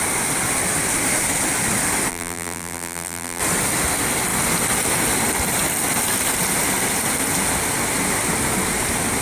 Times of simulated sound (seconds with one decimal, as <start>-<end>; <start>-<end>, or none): 2.1-3.4